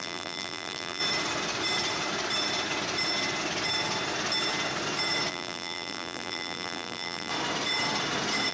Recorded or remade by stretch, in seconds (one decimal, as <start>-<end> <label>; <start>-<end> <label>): 0.0-1.0 remade; 1.0-5.3 recorded; 5.3-7.3 remade; 7.3-8.5 recorded